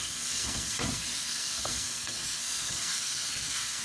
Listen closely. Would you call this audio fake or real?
fake